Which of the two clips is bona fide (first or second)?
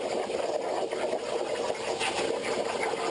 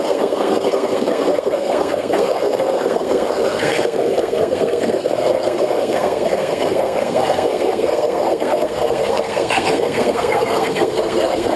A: first